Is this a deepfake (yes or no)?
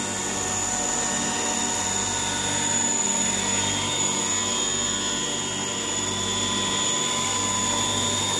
no